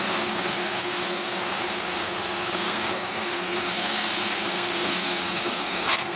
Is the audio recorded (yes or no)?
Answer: no